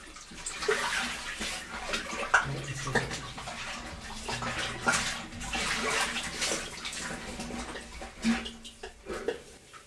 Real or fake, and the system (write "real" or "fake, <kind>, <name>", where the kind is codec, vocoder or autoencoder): real